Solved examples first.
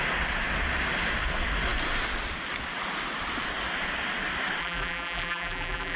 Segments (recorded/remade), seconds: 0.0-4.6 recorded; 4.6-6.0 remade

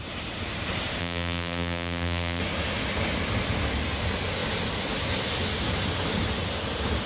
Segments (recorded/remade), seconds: 0.0-1.0 recorded; 1.0-2.4 remade; 2.4-7.1 recorded

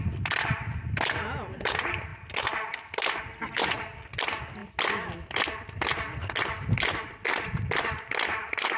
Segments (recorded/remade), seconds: 0.0-8.8 recorded

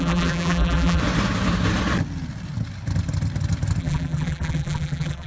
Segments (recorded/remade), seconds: 0.0-1.0 remade; 1.0-3.8 recorded; 3.8-5.3 remade